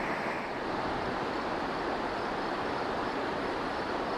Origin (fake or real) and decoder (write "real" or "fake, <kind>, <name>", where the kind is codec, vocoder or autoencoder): real